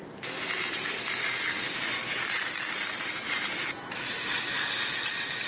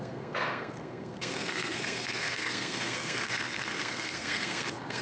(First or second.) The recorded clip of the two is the first